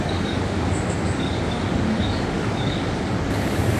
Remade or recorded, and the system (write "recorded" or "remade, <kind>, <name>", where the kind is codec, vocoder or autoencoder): remade, codec, DAC